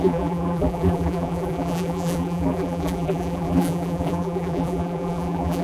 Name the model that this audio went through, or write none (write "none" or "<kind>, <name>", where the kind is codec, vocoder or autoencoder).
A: vocoder, BigVGAN v2